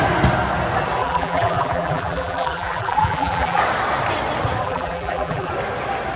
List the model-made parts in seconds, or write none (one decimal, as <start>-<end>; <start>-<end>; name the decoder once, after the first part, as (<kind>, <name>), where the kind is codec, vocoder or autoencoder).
1.0-3.6 (vocoder, BigVGAN v2); 4.6-5.5